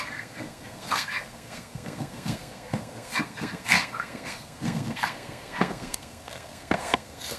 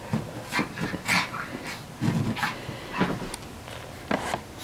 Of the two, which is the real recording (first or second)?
second